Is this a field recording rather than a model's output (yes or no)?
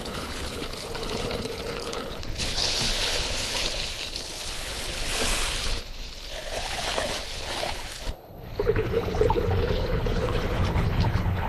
no